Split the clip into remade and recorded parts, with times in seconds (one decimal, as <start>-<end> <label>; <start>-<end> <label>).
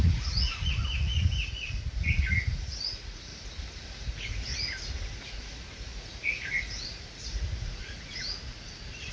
0.0-3.3 remade; 3.3-4.0 recorded; 4.0-4.5 remade; 4.5-5.1 recorded; 5.1-9.1 remade